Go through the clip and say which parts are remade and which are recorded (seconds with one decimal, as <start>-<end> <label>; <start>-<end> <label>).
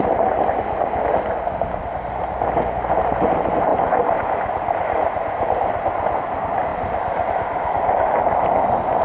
0.0-9.0 recorded